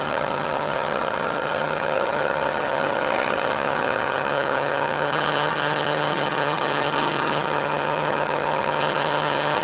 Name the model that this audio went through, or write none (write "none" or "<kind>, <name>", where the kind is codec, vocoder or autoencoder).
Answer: vocoder, HiFi-GAN